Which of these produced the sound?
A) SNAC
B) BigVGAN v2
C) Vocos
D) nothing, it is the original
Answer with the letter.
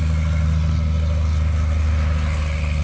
D